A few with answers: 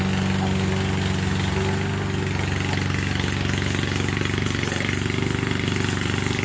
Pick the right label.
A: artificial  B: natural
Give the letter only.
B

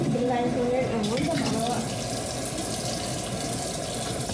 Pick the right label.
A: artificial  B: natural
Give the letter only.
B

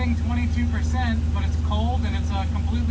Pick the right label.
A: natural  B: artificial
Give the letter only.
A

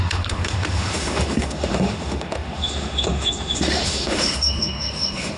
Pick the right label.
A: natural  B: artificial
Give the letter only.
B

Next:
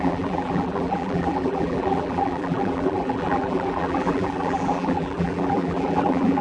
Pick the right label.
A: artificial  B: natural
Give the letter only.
A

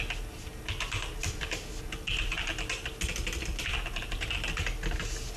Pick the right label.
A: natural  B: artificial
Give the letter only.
A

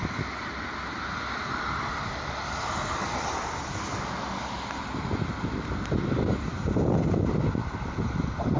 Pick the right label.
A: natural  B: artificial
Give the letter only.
A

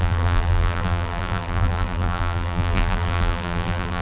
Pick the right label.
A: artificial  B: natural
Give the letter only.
A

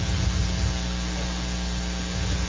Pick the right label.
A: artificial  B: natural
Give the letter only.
B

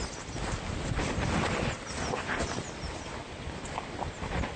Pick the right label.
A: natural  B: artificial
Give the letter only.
A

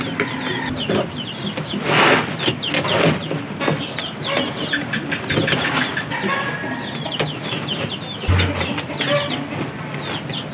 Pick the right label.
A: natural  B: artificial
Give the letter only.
A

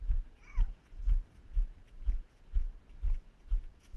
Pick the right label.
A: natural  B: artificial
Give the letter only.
B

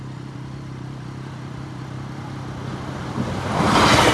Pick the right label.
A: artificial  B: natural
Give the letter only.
B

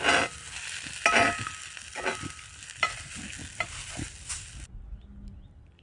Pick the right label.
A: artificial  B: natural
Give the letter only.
B